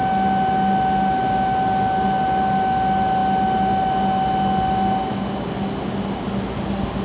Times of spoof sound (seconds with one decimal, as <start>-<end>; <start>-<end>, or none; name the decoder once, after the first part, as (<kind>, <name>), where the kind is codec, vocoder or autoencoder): none